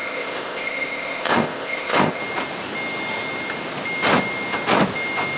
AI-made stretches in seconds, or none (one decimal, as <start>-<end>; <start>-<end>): 0.0-2.2